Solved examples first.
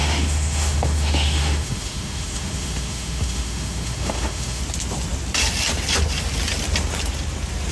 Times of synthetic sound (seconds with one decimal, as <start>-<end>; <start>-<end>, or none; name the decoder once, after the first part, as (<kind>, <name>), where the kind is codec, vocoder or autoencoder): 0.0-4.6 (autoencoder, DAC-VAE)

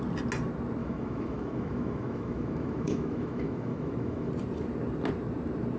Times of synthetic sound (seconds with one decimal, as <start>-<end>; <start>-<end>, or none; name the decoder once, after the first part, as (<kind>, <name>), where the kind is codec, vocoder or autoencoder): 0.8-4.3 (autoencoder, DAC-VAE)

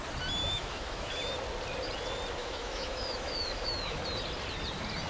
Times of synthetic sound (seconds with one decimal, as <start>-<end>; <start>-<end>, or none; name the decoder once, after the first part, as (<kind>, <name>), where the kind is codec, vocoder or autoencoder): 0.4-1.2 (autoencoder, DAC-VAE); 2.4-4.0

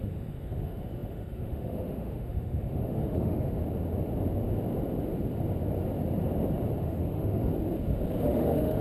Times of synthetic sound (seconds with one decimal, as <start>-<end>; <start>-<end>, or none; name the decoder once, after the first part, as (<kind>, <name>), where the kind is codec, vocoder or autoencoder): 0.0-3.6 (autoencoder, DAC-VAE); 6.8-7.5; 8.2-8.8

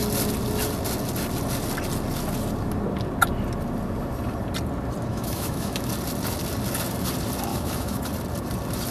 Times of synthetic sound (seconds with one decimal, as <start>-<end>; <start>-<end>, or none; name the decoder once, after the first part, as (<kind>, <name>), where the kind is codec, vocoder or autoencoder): 5.1-5.9 (autoencoder, DAC-VAE); 7.5-8.1

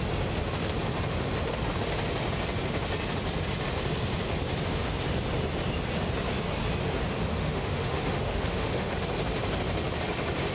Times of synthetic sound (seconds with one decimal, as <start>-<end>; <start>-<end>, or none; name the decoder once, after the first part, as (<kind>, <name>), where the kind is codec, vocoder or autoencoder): 7.3-8.9 (autoencoder, DAC-VAE)

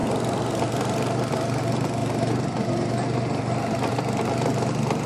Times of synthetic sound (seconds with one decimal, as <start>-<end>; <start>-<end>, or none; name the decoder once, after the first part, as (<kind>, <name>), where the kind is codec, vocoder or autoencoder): none